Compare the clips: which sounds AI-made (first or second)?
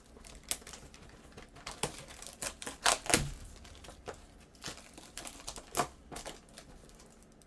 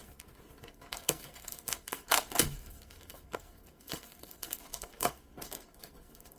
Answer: second